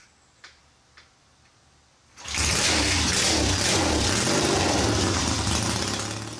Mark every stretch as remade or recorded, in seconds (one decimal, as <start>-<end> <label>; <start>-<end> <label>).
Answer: 0.0-6.4 recorded